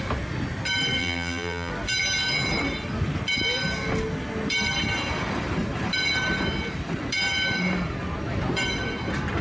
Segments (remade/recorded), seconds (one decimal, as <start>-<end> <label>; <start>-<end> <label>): 0.0-1.0 recorded; 1.0-1.7 remade; 1.7-9.4 recorded